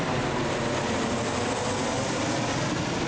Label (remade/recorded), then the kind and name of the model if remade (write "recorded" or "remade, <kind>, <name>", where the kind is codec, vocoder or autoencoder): recorded